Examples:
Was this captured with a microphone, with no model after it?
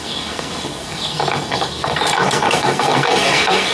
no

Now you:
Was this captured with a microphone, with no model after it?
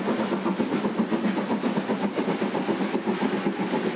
yes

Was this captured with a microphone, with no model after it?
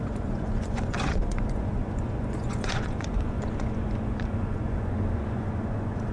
no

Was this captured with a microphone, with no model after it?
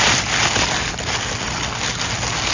yes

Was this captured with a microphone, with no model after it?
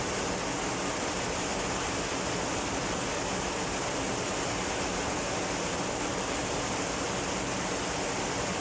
yes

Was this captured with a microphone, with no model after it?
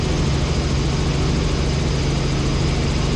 yes